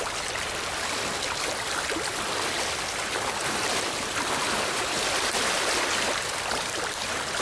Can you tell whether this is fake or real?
fake